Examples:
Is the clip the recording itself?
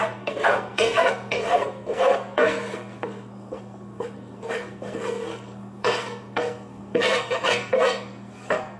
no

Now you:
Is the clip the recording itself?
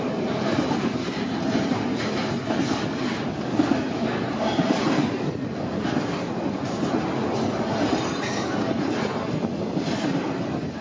yes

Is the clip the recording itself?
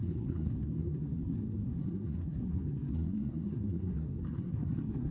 no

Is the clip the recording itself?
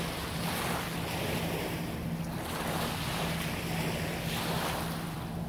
yes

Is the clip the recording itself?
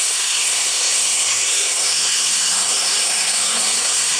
no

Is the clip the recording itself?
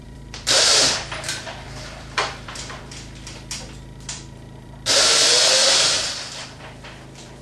no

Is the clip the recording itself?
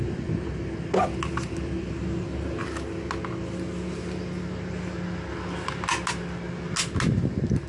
yes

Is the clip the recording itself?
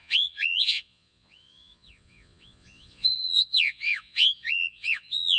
no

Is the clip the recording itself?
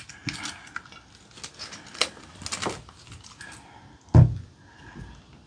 yes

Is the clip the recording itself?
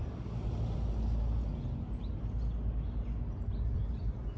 yes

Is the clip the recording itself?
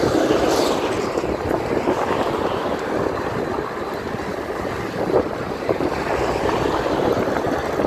yes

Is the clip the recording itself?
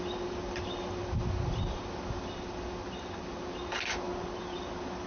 yes